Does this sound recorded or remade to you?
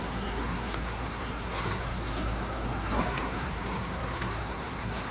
remade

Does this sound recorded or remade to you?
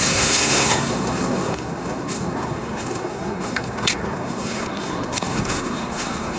remade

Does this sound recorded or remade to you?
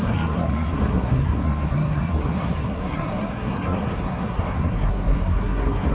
remade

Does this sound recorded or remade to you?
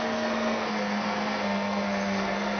remade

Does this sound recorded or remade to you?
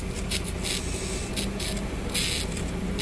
recorded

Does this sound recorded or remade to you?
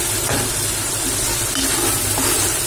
recorded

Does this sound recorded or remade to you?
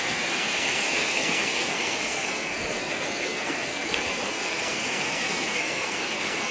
remade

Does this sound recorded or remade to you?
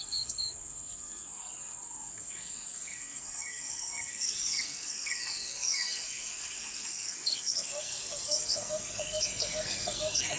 remade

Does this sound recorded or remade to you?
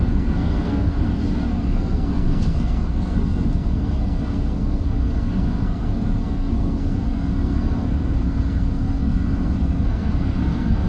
remade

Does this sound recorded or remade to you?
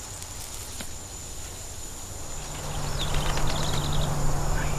recorded